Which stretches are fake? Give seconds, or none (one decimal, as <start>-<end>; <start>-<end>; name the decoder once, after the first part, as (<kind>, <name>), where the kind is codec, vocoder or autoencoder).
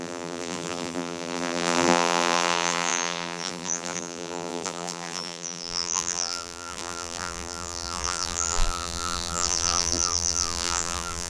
0.0-11.3 (vocoder, BigVGAN v2)